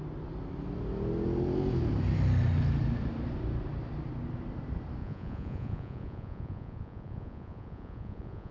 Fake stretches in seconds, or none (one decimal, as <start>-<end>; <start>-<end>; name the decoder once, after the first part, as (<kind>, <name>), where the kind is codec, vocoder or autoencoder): 5.0-8.5 (vocoder, Vocos)

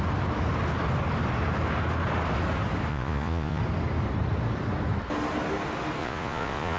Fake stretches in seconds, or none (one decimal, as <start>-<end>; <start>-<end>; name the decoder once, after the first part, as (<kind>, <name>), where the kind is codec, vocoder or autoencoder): 2.9-3.6 (vocoder, Vocos); 6.0-6.8

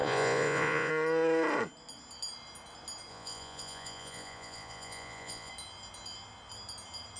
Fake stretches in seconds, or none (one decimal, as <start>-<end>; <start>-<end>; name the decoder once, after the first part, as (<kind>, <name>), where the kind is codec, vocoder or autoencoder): 0.0-0.9 (vocoder, Vocos); 3.1-5.5

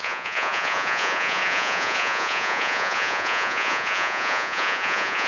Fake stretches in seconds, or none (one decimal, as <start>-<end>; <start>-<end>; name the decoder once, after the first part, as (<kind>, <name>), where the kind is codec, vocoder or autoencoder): 0.0-5.3 (vocoder, Vocos)

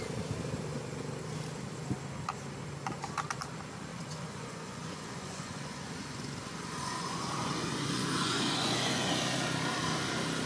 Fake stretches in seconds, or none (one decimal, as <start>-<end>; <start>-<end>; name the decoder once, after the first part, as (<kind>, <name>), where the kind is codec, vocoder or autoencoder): 3.9-9.1 (vocoder, Vocos)

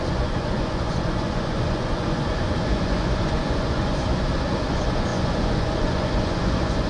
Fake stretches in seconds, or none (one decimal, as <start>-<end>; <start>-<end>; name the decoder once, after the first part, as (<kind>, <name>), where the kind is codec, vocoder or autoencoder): 0.0-6.9 (vocoder, Vocos)